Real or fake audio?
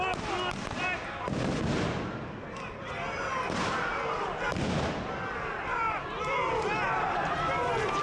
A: real